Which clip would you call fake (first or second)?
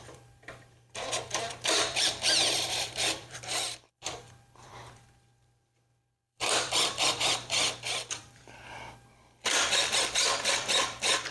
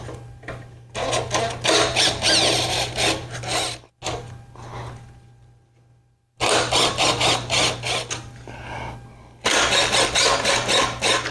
first